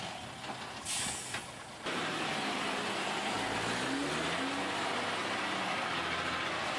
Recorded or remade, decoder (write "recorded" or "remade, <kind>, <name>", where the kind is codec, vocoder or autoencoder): recorded